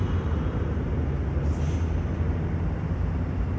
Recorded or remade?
recorded